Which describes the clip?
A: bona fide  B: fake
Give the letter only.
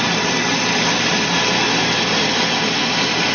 A